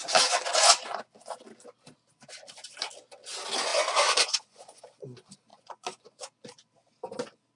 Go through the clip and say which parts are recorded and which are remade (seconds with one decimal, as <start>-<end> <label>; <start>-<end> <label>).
0.0-0.5 recorded; 0.5-1.0 remade; 1.0-3.7 recorded; 3.7-4.8 remade; 4.8-5.5 recorded; 5.5-6.2 remade; 6.2-7.6 recorded